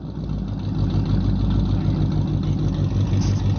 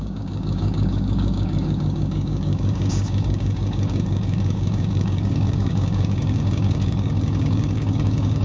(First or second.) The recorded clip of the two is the first